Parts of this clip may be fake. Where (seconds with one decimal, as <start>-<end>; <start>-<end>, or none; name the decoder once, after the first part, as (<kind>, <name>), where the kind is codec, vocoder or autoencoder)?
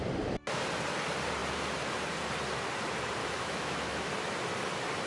3.2-4.1 (autoencoder, DAC-VAE)